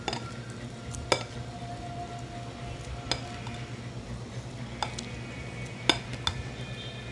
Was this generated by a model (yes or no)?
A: no